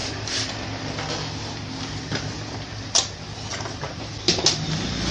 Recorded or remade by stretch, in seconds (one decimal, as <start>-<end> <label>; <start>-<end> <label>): 0.0-5.1 recorded

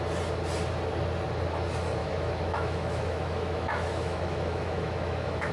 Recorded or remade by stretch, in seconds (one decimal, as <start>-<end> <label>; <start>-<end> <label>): 0.0-2.0 recorded; 2.0-5.5 remade

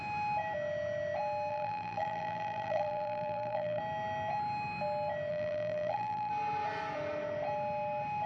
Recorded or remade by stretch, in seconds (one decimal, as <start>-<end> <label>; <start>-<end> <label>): 0.0-1.5 recorded; 1.5-3.8 remade; 3.8-5.3 recorded; 5.3-6.3 remade; 6.3-8.3 recorded

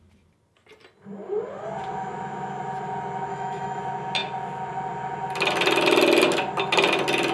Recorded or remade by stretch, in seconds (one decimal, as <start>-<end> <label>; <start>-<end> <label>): 0.0-3.3 recorded; 3.3-3.8 remade; 3.8-7.3 recorded

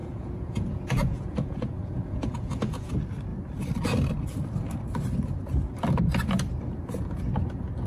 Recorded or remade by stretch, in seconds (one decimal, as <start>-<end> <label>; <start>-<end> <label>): 0.0-2.9 remade; 2.9-7.9 recorded